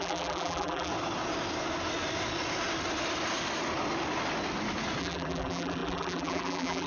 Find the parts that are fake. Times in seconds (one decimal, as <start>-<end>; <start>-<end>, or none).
0.0-0.9; 5.0-6.9